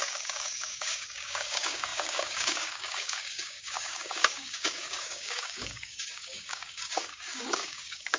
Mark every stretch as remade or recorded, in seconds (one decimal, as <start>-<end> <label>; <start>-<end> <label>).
0.0-8.2 remade